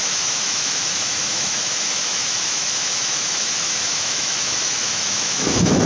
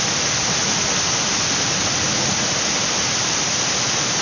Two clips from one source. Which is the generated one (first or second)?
first